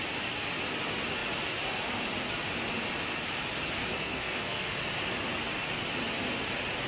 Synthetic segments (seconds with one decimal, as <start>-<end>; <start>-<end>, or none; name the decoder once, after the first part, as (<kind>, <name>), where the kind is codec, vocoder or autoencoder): 3.9-4.7 (codec, SNAC)

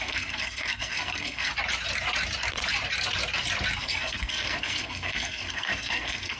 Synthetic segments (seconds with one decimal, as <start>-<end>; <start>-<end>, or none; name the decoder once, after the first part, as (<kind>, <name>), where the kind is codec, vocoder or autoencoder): 0.0-1.5 (codec, SNAC); 3.8-6.4

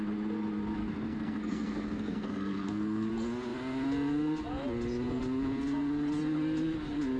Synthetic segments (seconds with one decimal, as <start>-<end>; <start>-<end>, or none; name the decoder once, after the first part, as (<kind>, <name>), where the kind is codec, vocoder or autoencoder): 0.8-3.1 (codec, SNAC)